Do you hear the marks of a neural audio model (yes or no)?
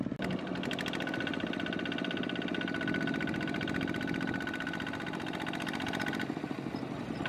no